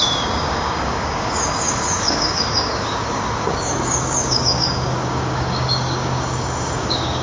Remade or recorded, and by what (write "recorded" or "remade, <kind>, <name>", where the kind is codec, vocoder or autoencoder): remade, codec, DAC